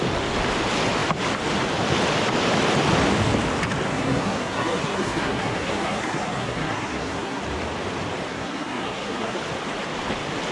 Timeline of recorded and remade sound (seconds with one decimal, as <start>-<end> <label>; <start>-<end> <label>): 0.0-3.9 recorded; 3.9-7.4 remade; 7.4-8.3 recorded; 8.3-9.4 remade; 9.4-10.5 recorded